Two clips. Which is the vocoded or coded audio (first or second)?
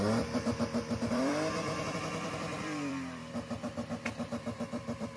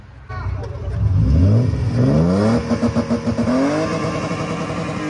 first